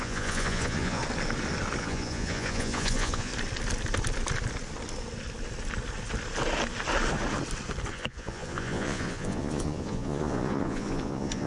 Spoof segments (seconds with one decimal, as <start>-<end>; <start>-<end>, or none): 0.0-1.0; 1.8-3.3; 7.9-11.5

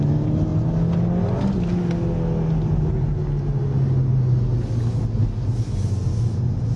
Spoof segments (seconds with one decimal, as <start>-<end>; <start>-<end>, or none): none

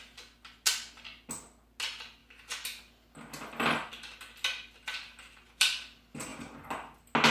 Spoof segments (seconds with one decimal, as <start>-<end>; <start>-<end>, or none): none

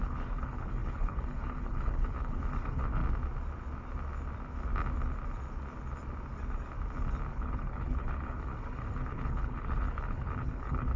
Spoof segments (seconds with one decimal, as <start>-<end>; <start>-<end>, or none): 0.0-3.0; 7.3-11.0

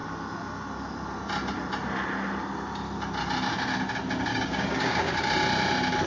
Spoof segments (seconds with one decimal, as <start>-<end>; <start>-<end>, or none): 4.3-5.1

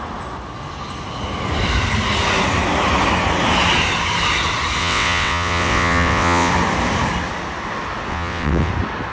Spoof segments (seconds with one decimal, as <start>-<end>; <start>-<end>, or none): 4.8-6.5; 8.1-8.7

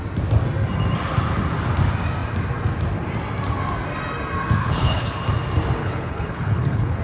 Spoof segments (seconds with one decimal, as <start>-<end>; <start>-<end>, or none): 4.6-5.2; 5.8-7.0

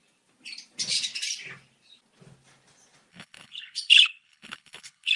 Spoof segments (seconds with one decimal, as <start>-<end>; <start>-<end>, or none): 3.1-5.2